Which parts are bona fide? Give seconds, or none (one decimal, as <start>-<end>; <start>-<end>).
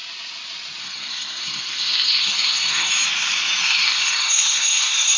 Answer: 0.0-0.8; 2.9-3.6